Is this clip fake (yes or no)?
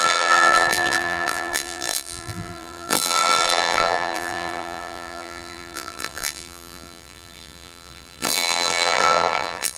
yes